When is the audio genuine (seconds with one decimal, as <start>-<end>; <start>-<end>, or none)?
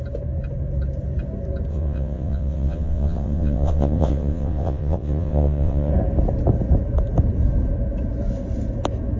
0.0-1.7; 5.9-9.2